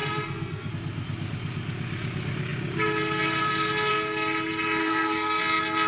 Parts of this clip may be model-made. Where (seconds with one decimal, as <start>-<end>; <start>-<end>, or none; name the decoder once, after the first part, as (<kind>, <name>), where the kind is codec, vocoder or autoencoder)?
0.0-0.7 (codec, SNAC); 4.8-5.4